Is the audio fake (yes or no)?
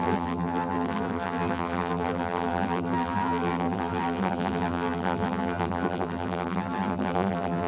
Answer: yes